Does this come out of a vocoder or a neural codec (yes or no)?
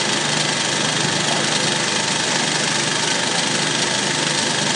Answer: no